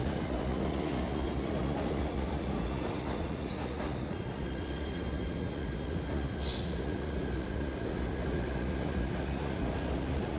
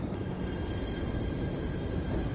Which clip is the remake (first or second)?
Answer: first